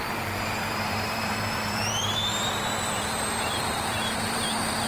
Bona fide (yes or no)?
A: no